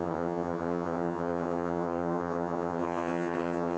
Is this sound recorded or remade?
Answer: remade